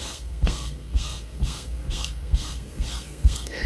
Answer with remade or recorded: remade